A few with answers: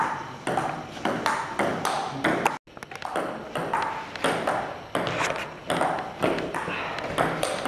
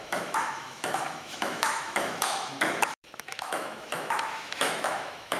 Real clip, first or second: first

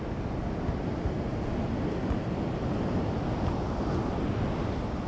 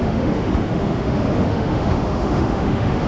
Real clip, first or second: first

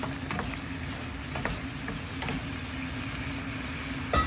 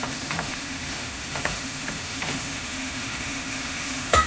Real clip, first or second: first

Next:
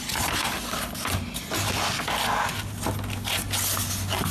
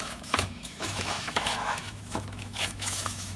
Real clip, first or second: first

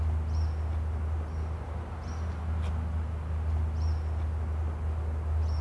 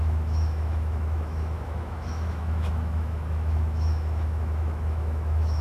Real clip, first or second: first